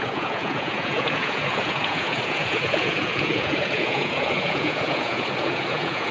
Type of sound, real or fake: fake